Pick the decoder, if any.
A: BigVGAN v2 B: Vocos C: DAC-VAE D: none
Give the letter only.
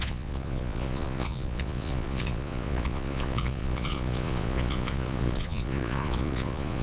B